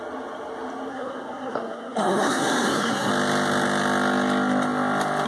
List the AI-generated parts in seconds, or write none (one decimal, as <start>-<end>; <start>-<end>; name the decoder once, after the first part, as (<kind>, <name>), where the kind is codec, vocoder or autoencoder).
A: 0.9-3.1 (codec, SNAC)